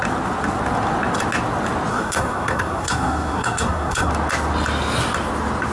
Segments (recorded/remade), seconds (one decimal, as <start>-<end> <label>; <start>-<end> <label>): 0.0-1.9 recorded; 1.9-4.1 remade; 4.1-5.7 recorded